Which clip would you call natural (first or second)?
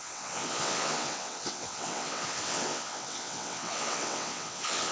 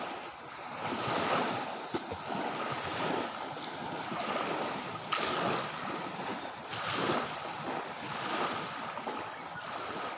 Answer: second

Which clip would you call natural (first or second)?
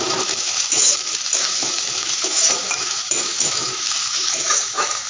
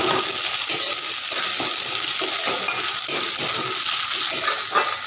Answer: second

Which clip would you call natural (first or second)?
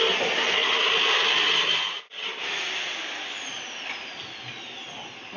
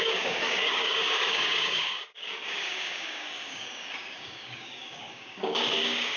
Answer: first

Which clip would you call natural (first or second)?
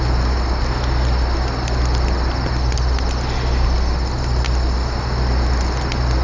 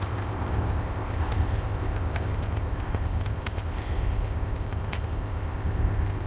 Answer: first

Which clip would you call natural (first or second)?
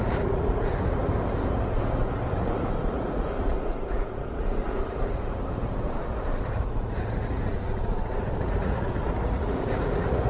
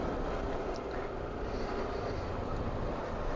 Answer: second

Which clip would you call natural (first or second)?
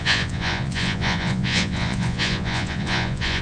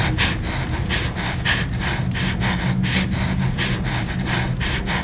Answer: second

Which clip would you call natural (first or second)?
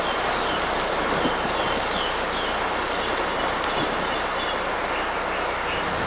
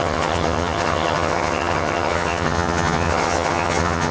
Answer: first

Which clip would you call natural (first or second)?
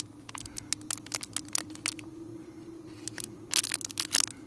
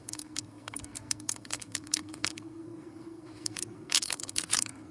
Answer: first